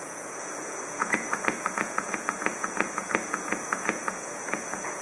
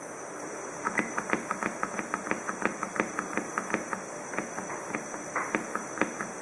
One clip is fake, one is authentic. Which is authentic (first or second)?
second